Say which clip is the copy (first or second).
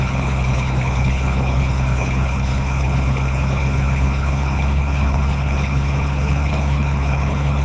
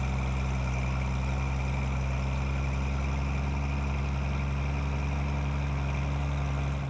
first